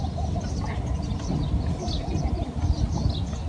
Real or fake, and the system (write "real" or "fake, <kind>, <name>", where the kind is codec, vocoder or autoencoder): real